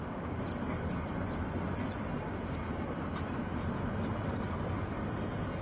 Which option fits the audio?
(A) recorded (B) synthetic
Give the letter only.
A